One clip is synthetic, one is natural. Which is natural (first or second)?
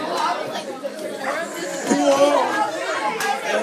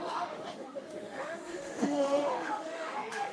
first